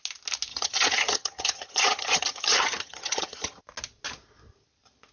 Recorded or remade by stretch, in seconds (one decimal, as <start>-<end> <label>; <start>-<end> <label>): 0.0-0.5 recorded; 0.5-3.6 remade; 3.6-5.1 recorded